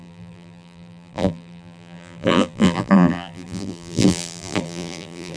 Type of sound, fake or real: fake